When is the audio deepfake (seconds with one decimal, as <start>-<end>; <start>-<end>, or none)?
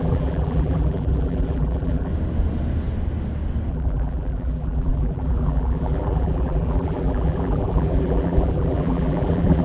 0.0-2.1; 3.7-9.6